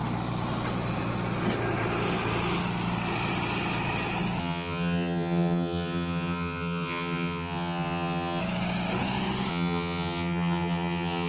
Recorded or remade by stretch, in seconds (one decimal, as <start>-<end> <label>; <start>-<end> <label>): 0.0-4.4 recorded; 4.4-8.4 remade; 8.4-9.5 recorded; 9.5-11.3 remade